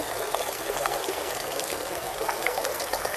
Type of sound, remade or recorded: remade